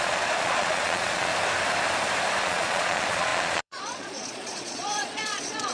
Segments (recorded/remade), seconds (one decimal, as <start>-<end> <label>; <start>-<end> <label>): 0.0-1.3 remade; 1.3-2.4 recorded; 2.4-5.7 remade